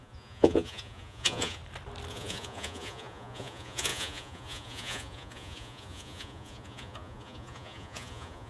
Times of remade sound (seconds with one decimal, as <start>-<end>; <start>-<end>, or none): 0.0-1.6; 2.1-8.5